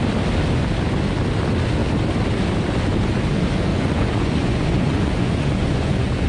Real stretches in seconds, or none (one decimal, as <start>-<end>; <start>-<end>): 0.0-3.7